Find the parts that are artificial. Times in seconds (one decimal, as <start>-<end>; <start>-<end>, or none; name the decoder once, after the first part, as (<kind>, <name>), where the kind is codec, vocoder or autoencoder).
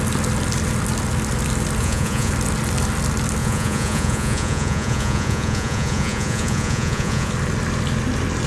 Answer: 1.8-2.3 (vocoder, Vocos); 3.4-7.3